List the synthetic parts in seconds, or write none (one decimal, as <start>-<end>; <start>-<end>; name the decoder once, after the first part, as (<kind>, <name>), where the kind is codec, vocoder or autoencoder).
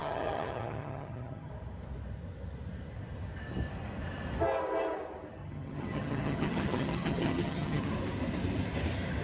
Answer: 0.0-1.5 (vocoder, HiFi-GAN); 5.4-7.9